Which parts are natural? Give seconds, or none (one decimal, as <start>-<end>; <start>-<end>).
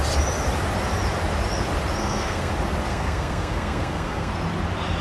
0.0-2.0; 2.5-2.9; 4.3-5.0